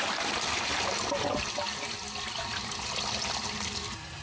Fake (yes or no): no